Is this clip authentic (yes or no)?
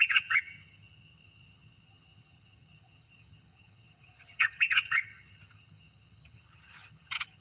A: no